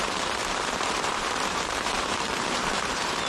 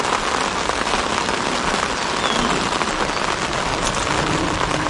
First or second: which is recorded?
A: second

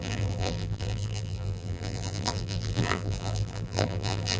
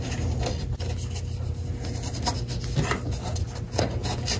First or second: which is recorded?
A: second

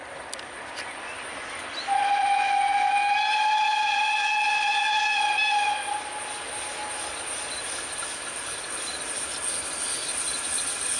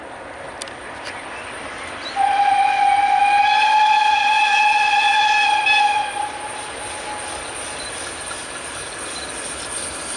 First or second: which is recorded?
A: first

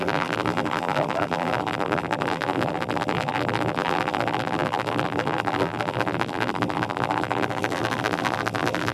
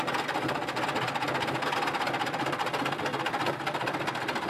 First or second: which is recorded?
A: second